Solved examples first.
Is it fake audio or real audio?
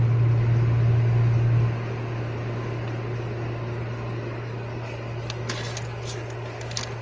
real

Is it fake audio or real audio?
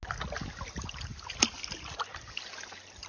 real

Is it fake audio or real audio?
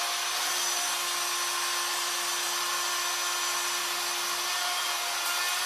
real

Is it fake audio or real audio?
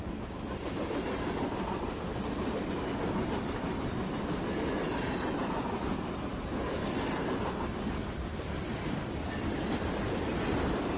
fake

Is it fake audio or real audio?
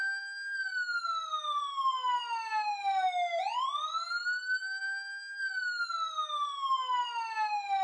real